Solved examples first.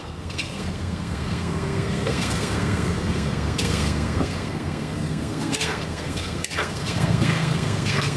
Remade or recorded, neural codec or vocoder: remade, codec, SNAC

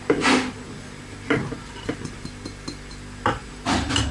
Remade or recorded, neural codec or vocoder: recorded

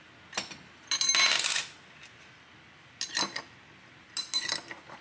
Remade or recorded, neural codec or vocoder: recorded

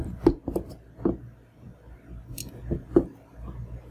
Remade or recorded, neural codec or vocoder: recorded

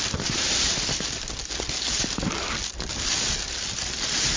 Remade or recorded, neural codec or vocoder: recorded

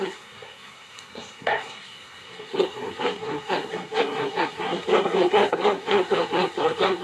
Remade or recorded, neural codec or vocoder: remade, codec, SNAC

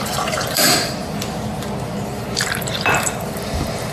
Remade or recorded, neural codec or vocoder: remade, vocoder, BigVGAN v2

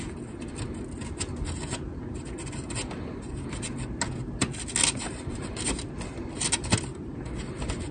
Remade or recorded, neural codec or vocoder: recorded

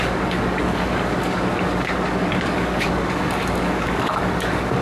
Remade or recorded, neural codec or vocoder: remade, codec, DAC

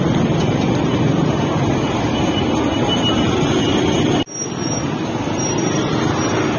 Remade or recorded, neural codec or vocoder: recorded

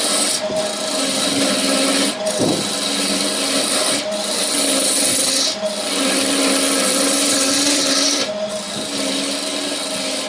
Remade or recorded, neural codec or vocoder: recorded